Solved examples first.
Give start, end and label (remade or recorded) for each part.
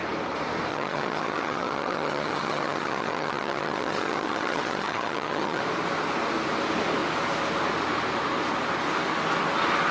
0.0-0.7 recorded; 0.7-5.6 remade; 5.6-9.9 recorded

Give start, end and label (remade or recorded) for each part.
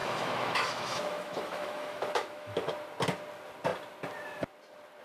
0.0-2.7 remade; 2.7-5.0 recorded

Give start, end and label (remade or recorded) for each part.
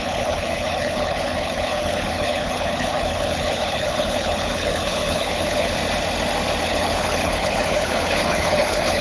0.0-5.8 remade; 5.8-6.6 recorded; 6.6-9.0 remade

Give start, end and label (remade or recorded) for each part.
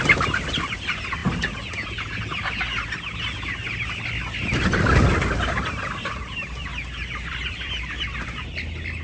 0.0-1.2 remade; 1.2-6.1 recorded; 6.1-6.7 remade; 6.7-7.3 recorded; 7.3-9.0 remade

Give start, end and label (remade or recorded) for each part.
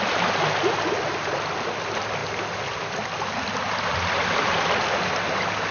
0.0-5.7 recorded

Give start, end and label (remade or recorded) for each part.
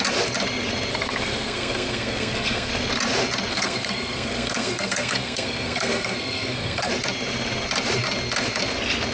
0.0-0.9 recorded; 0.9-2.7 remade; 2.7-3.5 recorded; 3.5-6.9 remade; 6.9-9.1 recorded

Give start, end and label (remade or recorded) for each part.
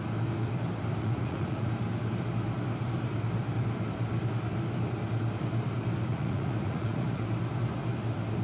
0.0-1.0 recorded; 1.0-1.7 remade; 1.7-6.1 recorded; 6.1-7.2 remade; 7.2-8.4 recorded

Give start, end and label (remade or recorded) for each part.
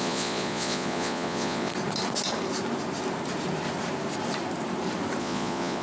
0.0-1.7 remade; 1.7-5.2 recorded; 5.2-5.8 remade